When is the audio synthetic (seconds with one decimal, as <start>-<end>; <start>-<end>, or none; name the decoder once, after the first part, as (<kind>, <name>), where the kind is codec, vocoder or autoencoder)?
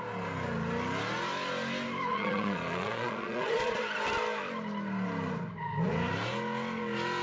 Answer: 2.1-3.8 (vocoder, Vocos)